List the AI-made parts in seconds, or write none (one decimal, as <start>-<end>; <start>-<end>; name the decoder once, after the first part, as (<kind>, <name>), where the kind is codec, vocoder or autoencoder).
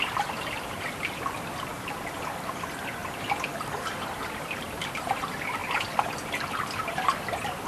0.0-1.7 (vocoder, BigVGAN v2); 2.5-5.6; 6.9-7.7